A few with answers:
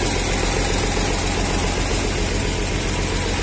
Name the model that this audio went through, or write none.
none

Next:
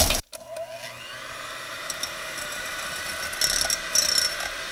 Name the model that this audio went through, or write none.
none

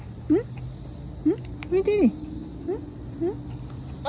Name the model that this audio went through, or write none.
none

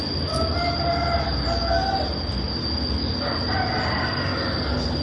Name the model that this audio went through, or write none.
none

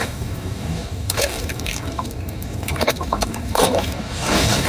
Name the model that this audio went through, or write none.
codec, DAC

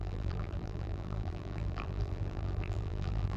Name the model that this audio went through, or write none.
vocoder, BigVGAN v2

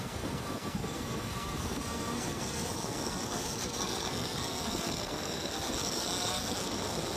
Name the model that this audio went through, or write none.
codec, SNAC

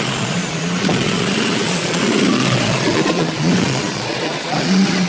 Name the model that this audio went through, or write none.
vocoder, Vocos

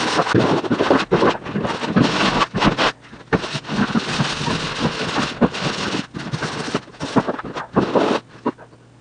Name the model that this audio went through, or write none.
none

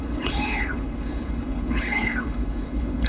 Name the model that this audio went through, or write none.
codec, HILCodec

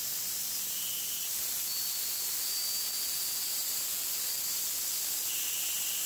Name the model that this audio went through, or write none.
none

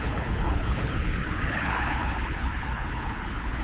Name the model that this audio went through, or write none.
codec, HILCodec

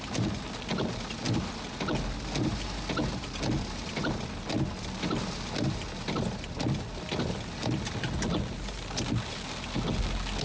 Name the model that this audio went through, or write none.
none